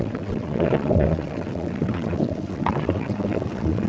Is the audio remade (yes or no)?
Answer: yes